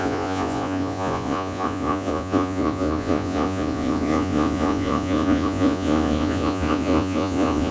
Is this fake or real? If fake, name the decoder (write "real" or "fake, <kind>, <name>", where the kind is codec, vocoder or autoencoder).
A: fake, vocoder, Vocos